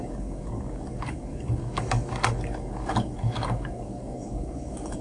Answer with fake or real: fake